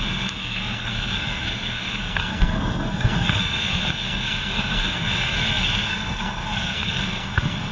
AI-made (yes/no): yes